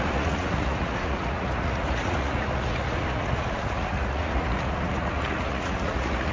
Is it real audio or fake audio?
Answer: fake